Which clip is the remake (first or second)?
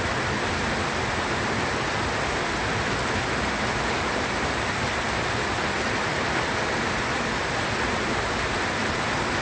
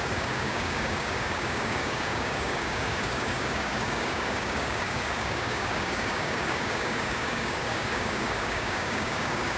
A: second